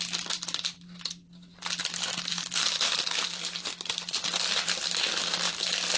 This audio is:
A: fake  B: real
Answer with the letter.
B